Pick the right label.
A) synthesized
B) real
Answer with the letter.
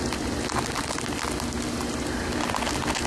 B